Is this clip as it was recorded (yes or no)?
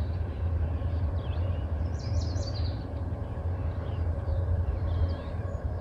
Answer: no